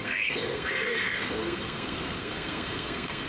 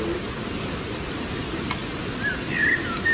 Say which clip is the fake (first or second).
first